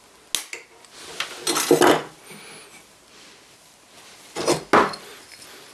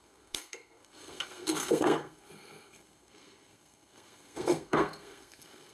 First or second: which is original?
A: first